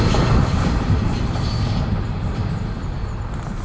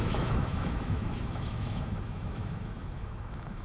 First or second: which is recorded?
first